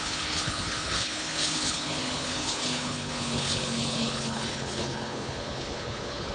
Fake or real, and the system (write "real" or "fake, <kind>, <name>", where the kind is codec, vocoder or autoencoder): fake, codec, HILCodec